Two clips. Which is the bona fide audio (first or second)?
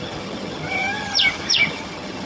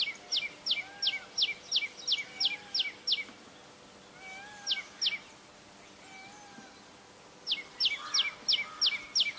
second